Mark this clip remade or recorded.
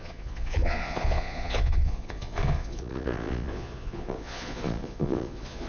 remade